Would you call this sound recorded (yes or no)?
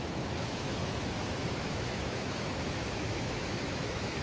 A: no